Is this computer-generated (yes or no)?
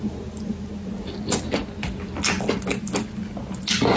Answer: no